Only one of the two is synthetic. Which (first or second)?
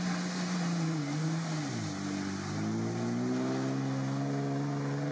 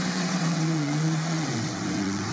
second